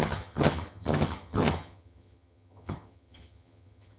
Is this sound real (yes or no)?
no